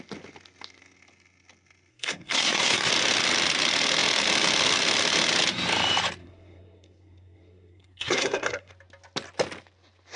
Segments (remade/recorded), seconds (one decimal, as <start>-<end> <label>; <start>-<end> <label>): 0.0-1.9 recorded; 1.9-2.9 remade; 2.9-6.2 recorded; 6.2-8.7 remade; 8.7-10.2 recorded